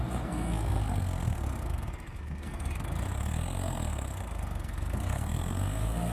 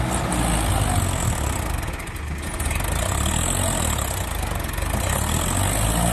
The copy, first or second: first